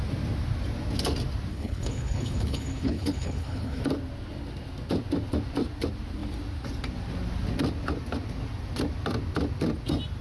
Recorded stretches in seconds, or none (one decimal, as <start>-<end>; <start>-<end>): 0.0-1.5; 3.8-10.2